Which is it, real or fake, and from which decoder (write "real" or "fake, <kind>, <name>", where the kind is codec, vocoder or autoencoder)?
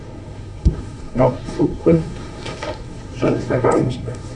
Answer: fake, codec, SNAC